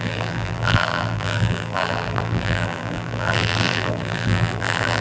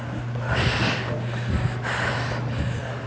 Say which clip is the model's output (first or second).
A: first